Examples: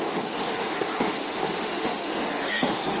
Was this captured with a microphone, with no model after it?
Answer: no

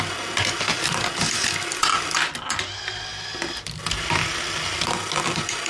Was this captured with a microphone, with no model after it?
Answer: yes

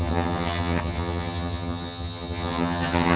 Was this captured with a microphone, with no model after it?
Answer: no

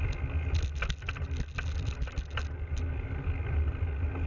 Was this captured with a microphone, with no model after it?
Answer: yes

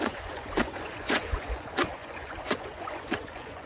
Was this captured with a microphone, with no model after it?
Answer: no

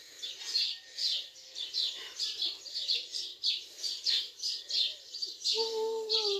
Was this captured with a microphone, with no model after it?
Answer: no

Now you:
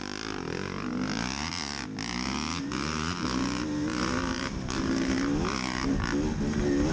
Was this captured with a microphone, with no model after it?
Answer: yes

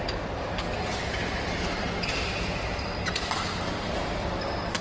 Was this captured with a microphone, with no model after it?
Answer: yes